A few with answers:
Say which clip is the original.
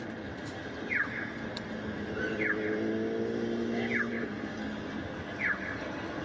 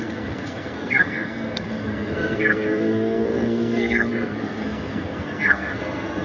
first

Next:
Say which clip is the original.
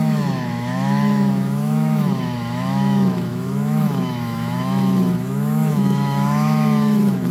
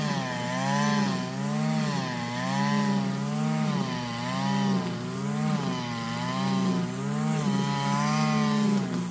second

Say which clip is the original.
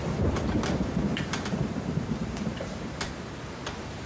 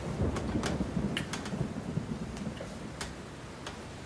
second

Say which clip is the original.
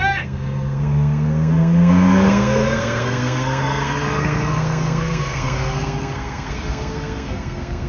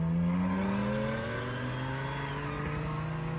second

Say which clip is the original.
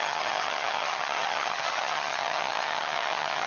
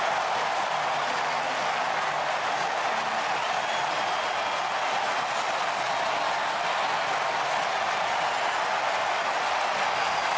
second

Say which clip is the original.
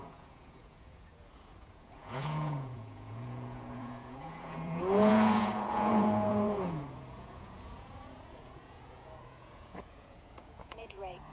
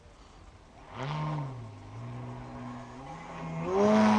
second